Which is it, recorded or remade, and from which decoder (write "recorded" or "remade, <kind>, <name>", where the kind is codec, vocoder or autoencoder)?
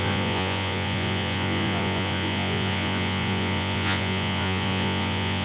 remade, vocoder, Vocos